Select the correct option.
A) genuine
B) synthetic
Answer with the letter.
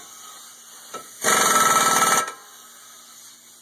A